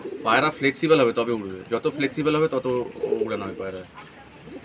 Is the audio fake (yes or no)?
no